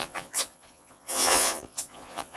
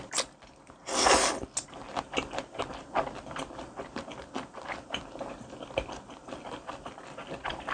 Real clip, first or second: second